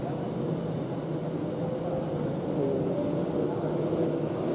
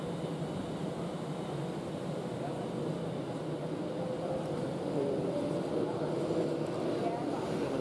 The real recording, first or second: first